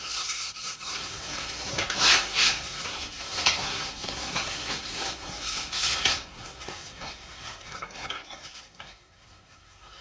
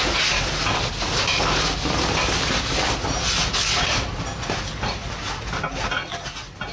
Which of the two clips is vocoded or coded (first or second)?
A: first